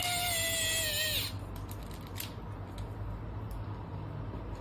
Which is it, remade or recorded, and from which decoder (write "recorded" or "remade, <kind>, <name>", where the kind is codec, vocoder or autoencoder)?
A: recorded